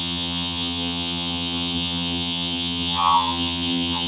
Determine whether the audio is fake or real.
fake